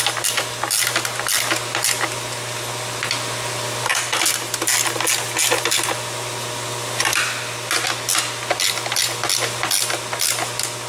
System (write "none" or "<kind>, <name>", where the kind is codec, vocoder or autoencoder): none